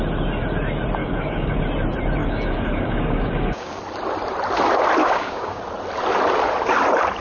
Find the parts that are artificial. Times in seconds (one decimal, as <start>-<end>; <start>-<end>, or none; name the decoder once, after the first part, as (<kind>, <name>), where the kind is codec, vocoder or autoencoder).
1.0-1.6 (codec, DAC); 2.2-3.8; 5.0-5.6